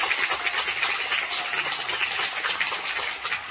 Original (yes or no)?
yes